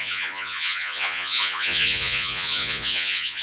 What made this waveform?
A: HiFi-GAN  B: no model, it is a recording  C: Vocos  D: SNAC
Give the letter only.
C